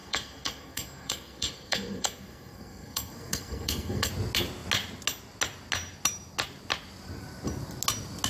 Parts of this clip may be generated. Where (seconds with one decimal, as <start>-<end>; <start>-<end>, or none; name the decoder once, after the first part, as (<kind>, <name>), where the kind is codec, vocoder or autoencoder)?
0.0-4.1 (codec, SNAC)